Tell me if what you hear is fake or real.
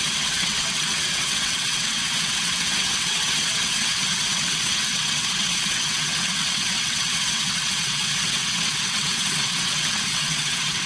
fake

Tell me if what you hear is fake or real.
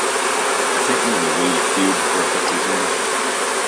real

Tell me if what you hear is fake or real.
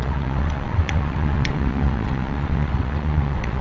fake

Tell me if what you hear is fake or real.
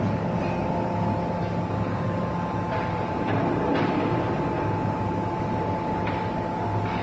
real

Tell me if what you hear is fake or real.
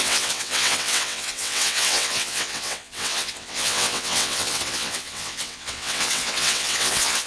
fake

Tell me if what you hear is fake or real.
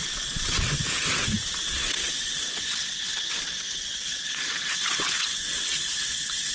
fake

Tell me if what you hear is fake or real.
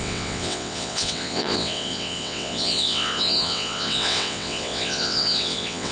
fake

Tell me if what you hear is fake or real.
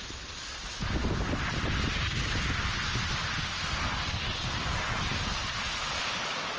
real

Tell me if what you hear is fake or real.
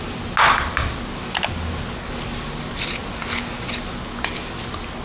real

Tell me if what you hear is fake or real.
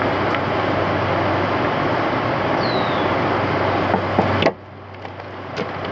real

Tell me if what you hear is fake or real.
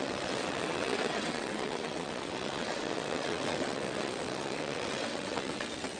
fake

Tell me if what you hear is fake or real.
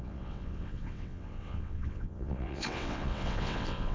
fake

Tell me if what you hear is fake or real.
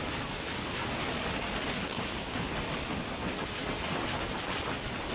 real